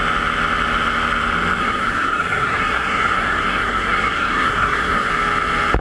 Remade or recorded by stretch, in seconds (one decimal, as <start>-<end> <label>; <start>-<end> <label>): 0.0-1.6 recorded; 1.6-5.1 remade; 5.1-5.8 recorded

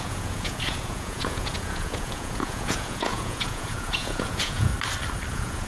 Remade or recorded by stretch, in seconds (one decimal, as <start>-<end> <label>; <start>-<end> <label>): 0.0-4.7 remade; 4.7-5.3 recorded; 5.3-5.7 remade

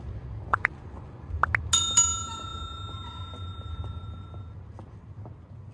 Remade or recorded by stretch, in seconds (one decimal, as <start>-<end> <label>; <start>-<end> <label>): 0.0-0.5 recorded; 0.5-1.3 remade; 1.3-5.7 recorded

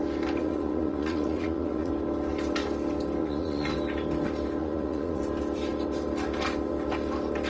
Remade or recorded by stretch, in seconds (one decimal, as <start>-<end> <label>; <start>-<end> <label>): 0.0-0.4 recorded; 0.4-1.9 remade; 1.9-3.2 recorded; 3.2-3.7 remade; 3.7-4.6 recorded; 4.6-5.2 remade; 5.2-7.5 recorded